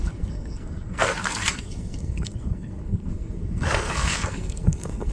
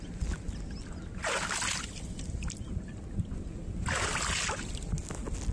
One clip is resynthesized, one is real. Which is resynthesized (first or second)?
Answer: first